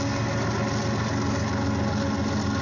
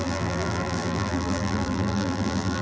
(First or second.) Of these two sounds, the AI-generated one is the second